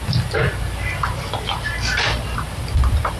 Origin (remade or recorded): remade